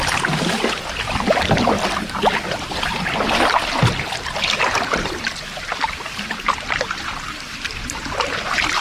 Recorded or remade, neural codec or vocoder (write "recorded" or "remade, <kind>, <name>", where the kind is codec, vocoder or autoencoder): remade, vocoder, BigVGAN v2